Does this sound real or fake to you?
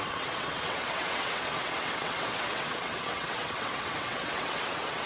fake